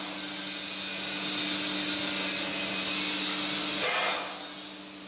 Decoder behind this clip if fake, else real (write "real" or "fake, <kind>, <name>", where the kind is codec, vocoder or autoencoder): real